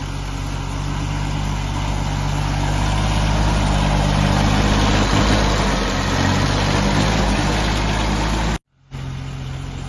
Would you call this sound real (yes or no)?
yes